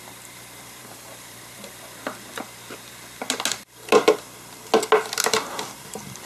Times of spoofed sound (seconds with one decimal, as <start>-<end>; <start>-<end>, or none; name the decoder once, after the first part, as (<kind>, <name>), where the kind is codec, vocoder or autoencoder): 0.0-2.0 (vocoder, BigVGAN v2); 5.8-6.3